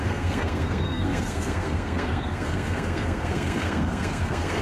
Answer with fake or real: fake